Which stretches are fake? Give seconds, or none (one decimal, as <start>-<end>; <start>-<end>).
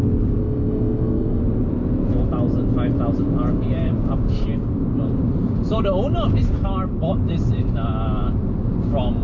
0.4-1.4